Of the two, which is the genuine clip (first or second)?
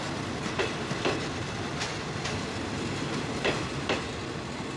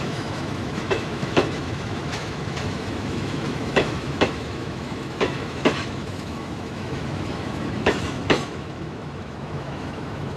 first